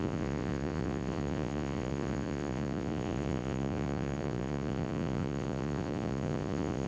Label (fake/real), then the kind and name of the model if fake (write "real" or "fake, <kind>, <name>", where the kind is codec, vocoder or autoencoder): fake, vocoder, Vocos